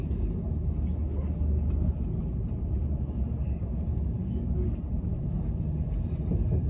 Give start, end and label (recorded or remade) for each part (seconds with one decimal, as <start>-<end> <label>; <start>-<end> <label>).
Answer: 0.0-6.7 recorded